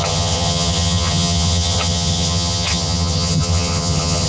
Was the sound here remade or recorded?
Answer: remade